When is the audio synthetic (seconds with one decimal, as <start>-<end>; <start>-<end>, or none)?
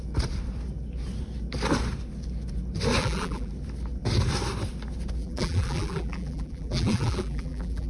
3.0-3.5; 5.2-7.9